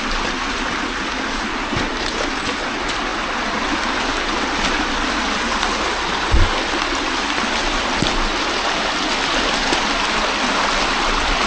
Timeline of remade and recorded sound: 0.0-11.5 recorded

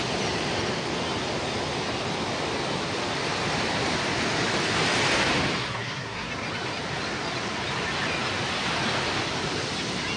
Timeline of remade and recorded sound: 0.0-5.6 recorded; 5.6-6.3 remade; 6.3-10.2 recorded

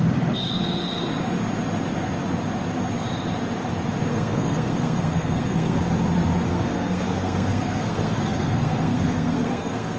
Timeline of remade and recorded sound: 0.0-4.1 recorded; 4.1-5.8 remade; 5.8-6.5 recorded; 6.5-10.0 remade

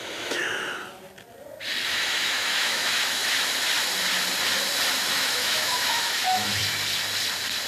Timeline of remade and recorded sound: 0.0-0.4 remade; 0.4-1.9 recorded; 1.9-3.2 remade; 3.2-5.1 recorded; 5.1-6.6 remade; 6.6-7.7 recorded

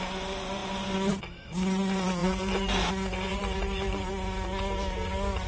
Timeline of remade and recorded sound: 0.0-2.2 recorded; 2.2-2.9 remade; 2.9-3.3 recorded; 3.3-4.1 remade; 4.1-5.5 recorded

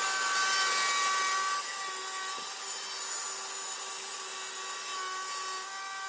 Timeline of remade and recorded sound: 0.0-6.1 recorded